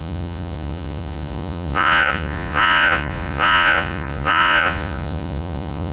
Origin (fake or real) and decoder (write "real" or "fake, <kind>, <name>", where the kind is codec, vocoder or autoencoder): fake, vocoder, Vocos